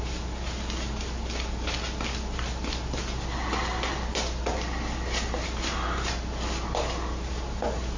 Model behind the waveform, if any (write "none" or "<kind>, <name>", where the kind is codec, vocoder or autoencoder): none